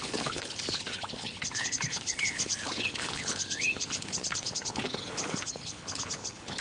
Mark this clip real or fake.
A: fake